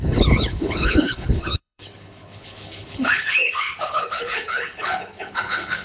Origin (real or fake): fake